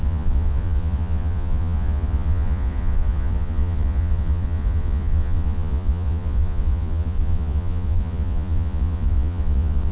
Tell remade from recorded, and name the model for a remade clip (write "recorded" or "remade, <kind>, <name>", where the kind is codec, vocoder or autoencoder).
remade, vocoder, Vocos